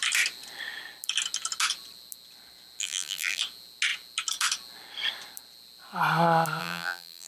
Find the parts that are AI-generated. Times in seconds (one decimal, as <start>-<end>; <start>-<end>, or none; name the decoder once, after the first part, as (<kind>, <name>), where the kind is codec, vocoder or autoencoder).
2.8-3.4 (vocoder, BigVGAN v2); 6.6-7.3